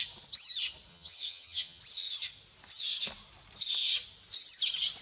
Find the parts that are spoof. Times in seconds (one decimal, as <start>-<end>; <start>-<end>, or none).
0.9-1.8

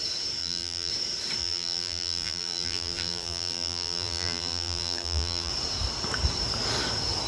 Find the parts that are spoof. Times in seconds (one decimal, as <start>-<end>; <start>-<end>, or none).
0.4-0.9; 1.4-5.5